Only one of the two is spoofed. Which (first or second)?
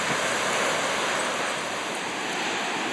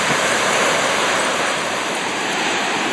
second